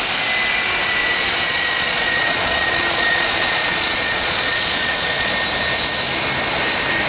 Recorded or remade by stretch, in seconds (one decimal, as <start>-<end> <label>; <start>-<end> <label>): 0.0-1.0 recorded; 1.0-5.3 remade; 5.3-7.1 recorded